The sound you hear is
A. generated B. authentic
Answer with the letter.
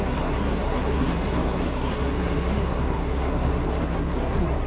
A